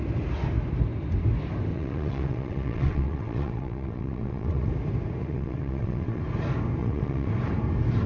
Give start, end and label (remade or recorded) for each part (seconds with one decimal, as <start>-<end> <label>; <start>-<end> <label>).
0.0-1.7 recorded; 1.7-4.7 remade; 4.7-5.2 recorded; 5.2-6.2 remade; 6.2-6.8 recorded; 6.8-7.3 remade; 7.3-8.1 recorded